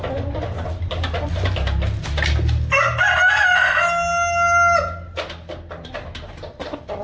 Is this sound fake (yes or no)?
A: no